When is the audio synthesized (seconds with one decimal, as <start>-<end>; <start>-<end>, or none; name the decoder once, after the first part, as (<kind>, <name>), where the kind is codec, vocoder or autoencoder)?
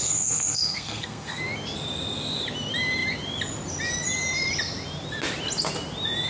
0.0-1.4 (codec, SNAC)